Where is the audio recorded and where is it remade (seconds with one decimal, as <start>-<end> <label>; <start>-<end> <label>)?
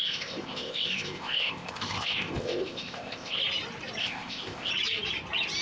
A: 0.0-3.4 remade; 3.4-4.0 recorded; 4.0-4.7 remade; 4.7-5.6 recorded